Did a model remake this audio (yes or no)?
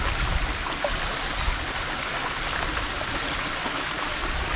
no